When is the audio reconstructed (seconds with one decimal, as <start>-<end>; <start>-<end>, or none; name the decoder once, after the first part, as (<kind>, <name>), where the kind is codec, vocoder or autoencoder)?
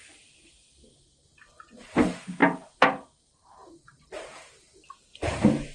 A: none